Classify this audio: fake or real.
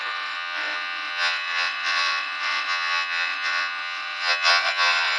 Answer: fake